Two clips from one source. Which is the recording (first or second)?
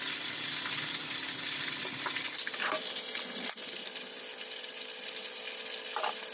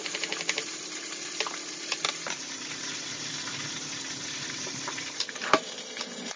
first